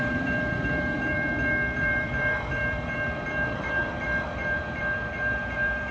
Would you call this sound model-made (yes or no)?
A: yes